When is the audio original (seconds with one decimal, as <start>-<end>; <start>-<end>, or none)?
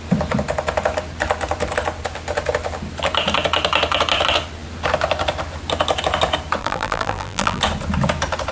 0.0-6.6; 7.6-8.5